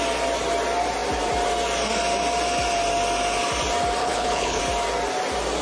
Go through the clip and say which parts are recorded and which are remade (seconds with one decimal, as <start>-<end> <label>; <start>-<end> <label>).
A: 0.0-4.0 recorded; 4.0-4.6 remade; 4.6-5.6 recorded